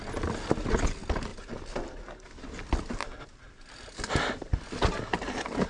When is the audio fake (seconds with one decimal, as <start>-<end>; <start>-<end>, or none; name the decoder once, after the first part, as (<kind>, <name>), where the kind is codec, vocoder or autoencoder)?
none